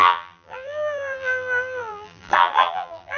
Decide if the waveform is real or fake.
fake